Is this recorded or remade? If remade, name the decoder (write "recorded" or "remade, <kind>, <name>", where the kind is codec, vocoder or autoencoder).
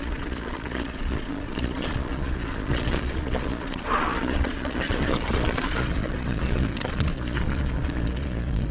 remade, vocoder, Vocos